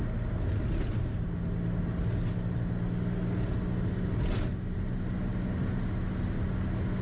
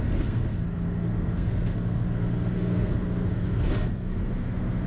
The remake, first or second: second